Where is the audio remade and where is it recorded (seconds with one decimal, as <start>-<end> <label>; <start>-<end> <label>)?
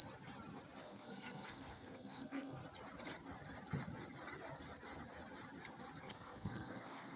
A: 0.0-0.8 recorded; 0.8-2.6 remade; 2.6-6.0 recorded; 6.0-7.2 remade